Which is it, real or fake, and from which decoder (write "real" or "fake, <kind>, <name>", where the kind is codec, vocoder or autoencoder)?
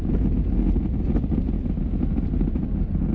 real